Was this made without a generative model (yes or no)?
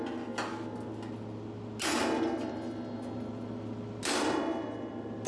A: yes